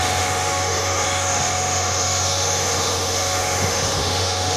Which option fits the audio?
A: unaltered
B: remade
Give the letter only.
B